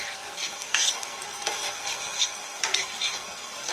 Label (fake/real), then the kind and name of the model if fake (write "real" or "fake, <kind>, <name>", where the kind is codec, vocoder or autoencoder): fake, codec, SNAC